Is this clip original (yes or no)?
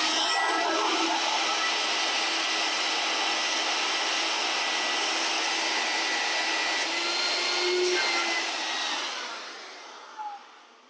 yes